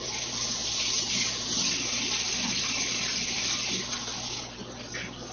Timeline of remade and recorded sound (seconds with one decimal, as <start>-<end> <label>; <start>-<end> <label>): 0.0-5.3 recorded